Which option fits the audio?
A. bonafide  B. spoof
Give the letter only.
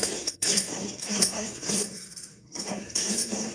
B